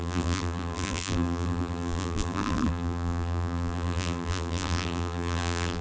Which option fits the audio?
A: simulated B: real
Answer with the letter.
A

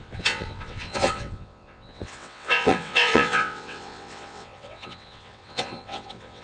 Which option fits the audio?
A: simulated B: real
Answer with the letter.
A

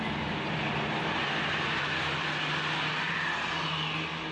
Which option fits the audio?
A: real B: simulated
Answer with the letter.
A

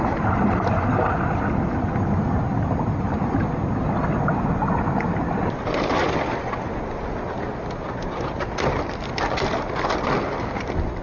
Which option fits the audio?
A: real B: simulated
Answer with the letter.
A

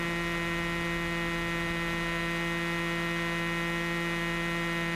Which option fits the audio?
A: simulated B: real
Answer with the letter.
B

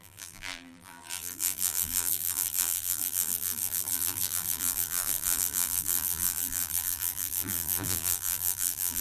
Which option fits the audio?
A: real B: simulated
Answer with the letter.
B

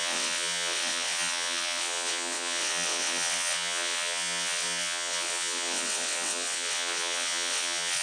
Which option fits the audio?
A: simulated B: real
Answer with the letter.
A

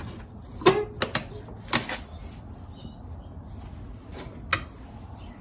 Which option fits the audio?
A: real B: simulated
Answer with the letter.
A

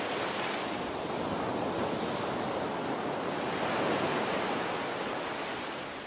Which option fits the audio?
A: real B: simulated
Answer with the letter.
A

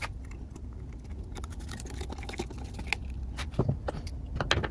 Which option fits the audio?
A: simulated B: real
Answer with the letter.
B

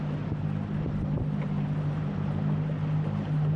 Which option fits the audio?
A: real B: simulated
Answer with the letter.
A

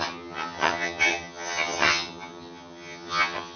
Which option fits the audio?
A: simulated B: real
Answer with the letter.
A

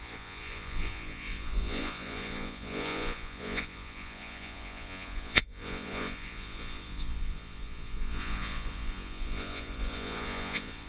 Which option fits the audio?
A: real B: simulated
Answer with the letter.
B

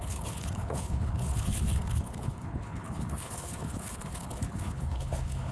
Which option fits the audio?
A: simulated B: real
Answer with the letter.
A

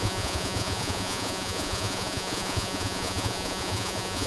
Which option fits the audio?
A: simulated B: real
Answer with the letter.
A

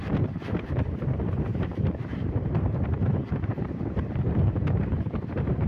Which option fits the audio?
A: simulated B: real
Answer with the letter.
A